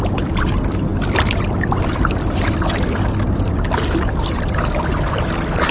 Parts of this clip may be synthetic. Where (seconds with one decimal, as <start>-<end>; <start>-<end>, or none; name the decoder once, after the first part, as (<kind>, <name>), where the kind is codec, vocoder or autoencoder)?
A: none

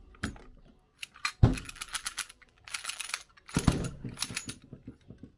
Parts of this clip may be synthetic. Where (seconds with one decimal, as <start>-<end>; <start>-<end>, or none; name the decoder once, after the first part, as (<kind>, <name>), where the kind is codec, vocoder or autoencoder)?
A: 1.5-3.3 (vocoder, BigVGAN v2)

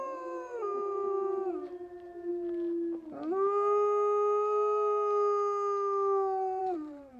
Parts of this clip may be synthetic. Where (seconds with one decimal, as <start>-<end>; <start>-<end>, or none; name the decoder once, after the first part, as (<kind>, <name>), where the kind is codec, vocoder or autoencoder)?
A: 0.0-2.3 (vocoder, BigVGAN v2); 6.6-7.2